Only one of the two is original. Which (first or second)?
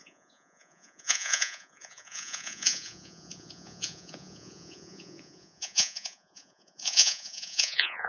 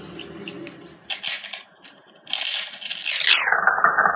second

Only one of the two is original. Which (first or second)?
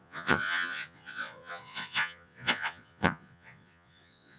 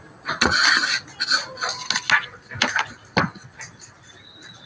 second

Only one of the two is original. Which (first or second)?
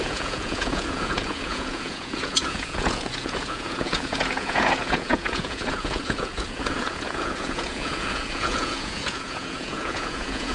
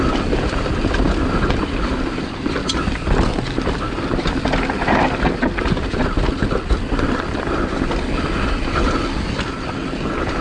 second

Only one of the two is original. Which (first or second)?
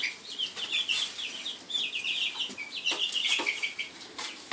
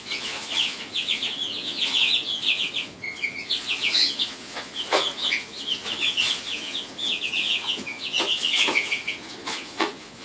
first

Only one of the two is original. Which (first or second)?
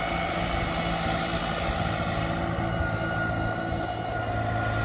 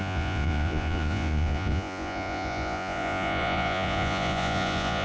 first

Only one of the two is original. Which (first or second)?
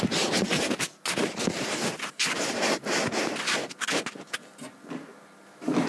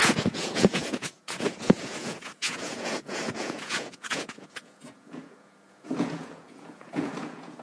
first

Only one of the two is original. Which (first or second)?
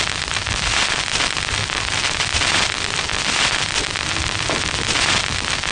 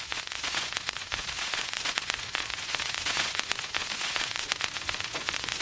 first